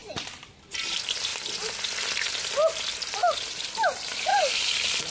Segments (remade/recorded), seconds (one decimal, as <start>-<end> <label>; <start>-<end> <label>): 0.0-0.5 remade; 0.5-3.2 recorded; 3.2-3.7 remade; 3.7-5.1 recorded